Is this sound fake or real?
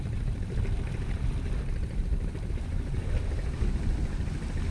real